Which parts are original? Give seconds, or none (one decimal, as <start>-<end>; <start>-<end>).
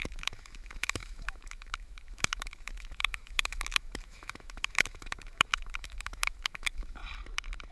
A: 7.0-7.7